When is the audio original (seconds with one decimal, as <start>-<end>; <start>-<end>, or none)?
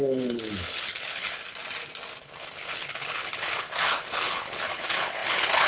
1.4-2.2